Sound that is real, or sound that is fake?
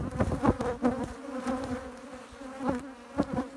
real